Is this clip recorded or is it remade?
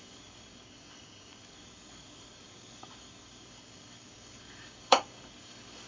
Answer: remade